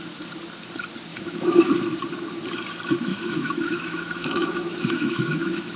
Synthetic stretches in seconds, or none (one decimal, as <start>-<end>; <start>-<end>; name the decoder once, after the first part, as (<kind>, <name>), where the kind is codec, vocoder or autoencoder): 1.1-1.7 (autoencoder, DAC-VAE); 3.1-5.8